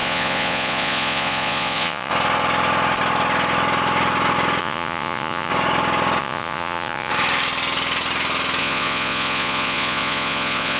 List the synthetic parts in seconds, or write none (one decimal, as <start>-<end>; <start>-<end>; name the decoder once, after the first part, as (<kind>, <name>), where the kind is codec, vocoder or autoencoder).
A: 0.0-2.1 (vocoder, Vocos); 4.6-5.5; 6.2-7.1; 8.6-10.8